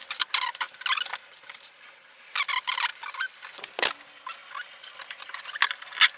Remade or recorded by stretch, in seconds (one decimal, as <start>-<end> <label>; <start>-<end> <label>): 0.0-6.2 recorded